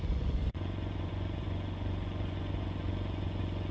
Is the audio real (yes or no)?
no